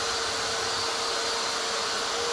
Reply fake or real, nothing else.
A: real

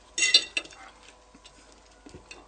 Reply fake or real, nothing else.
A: real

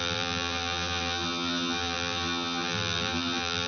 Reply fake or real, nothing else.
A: fake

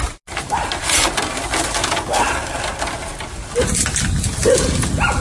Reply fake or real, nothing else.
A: real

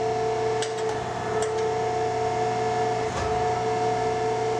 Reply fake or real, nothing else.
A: real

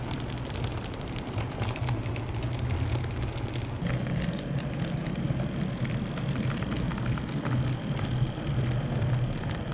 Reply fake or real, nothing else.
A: real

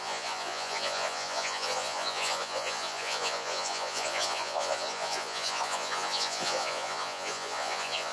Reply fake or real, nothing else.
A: fake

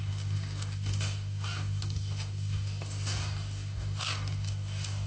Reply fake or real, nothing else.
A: fake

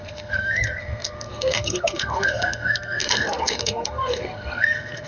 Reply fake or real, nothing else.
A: fake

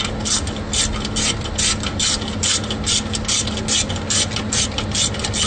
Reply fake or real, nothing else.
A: real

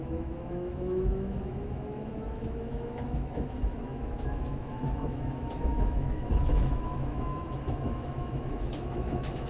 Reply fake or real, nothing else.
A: fake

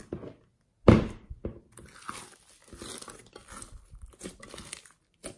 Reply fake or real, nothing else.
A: real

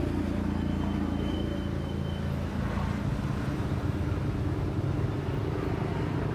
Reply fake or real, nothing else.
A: real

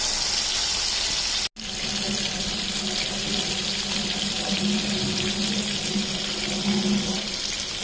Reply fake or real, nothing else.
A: real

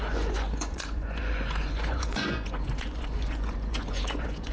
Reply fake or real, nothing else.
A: fake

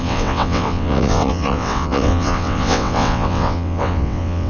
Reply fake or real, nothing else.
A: fake